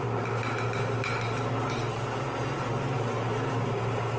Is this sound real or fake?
real